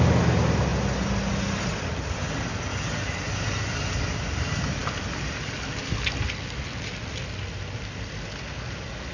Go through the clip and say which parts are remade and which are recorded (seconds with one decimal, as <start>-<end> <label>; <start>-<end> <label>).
0.0-9.1 recorded